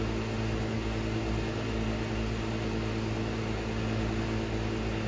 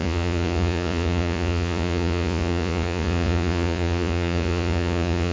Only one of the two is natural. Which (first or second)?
first